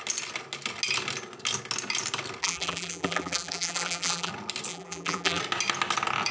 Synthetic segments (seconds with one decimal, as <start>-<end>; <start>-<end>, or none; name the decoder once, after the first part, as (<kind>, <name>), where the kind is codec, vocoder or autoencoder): 2.4-4.3 (vocoder, BigVGAN v2); 4.7-5.4

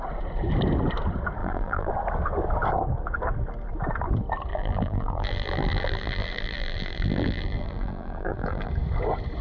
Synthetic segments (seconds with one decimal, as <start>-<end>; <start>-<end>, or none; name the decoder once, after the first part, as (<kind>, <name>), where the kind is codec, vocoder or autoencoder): 1.4-1.9 (vocoder, BigVGAN v2); 4.5-8.7

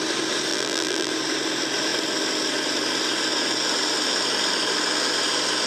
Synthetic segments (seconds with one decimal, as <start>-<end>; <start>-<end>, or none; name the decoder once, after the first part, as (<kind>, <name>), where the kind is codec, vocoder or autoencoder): 0.5-1.1 (vocoder, BigVGAN v2)